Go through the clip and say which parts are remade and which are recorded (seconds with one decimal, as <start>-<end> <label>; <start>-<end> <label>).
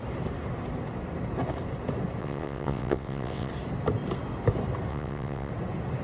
0.0-2.2 recorded; 2.2-3.5 remade; 3.5-4.9 recorded; 4.9-5.5 remade; 5.5-6.0 recorded